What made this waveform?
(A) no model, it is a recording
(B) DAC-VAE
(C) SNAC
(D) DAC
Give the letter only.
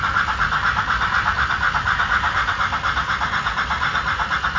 A